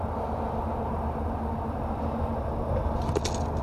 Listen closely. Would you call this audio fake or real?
real